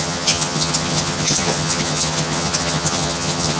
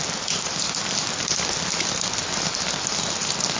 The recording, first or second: second